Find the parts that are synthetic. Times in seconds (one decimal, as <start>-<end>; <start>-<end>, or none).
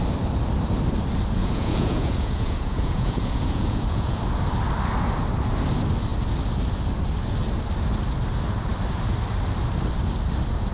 1.4-4.2